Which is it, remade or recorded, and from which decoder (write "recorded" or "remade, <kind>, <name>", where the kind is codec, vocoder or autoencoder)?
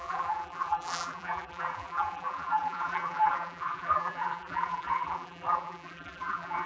remade, vocoder, BigVGAN v2